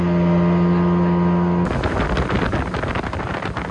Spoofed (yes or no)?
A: no